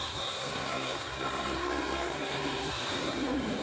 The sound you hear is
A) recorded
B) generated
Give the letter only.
B